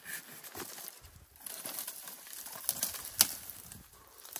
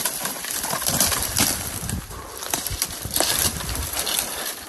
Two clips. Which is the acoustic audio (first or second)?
first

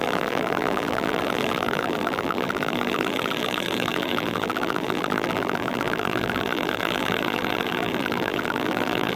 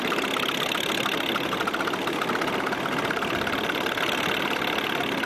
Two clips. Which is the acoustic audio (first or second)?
second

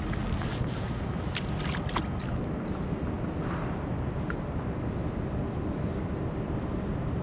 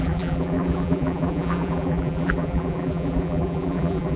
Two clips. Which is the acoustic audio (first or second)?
first